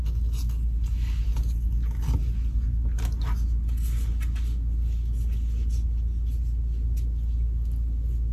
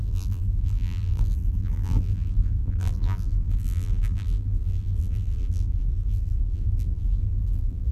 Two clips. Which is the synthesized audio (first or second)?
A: second